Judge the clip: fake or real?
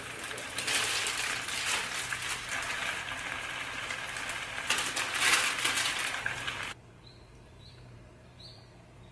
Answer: fake